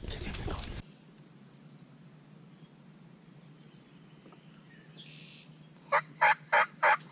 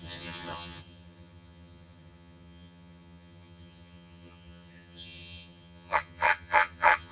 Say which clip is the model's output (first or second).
second